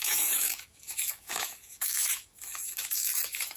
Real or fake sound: fake